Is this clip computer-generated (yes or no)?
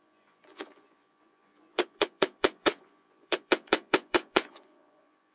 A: yes